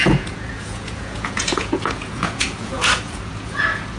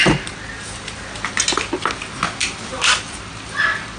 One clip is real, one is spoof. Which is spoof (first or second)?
first